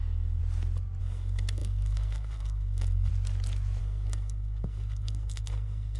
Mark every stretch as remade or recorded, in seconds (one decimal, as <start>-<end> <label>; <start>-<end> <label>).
0.0-0.4 remade; 0.4-1.0 recorded; 1.0-3.1 remade; 3.1-3.8 recorded; 3.8-6.0 remade